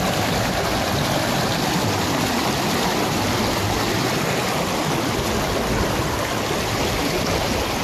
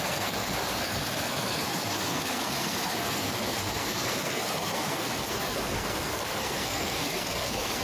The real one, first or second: first